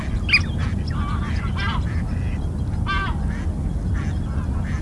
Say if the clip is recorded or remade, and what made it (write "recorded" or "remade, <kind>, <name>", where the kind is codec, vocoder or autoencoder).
recorded